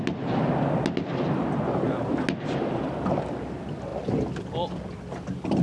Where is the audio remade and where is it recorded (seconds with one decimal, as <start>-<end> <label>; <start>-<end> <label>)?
0.0-5.6 recorded